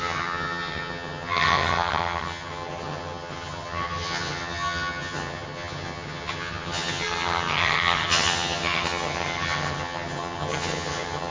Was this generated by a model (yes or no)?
yes